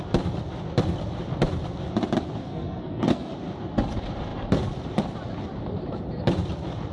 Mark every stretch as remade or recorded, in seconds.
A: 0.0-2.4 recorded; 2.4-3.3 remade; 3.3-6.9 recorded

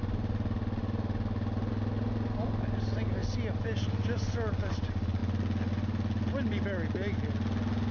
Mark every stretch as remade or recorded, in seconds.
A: 0.0-7.9 recorded